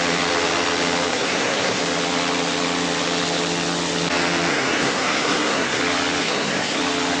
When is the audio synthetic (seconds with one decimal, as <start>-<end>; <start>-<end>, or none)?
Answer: 1.1-1.8; 4.5-5.8; 6.2-6.8